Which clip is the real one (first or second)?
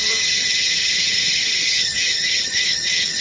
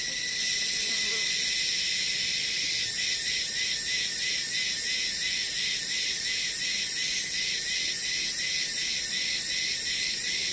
second